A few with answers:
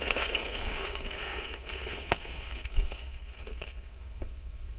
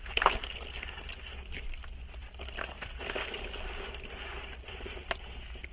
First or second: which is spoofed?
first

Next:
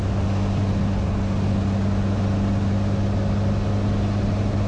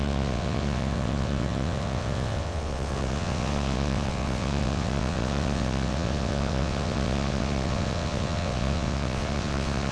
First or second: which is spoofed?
second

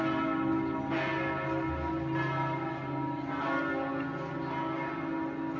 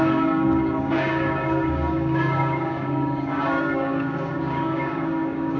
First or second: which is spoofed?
second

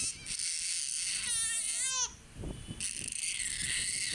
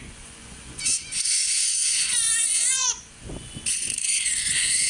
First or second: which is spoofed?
second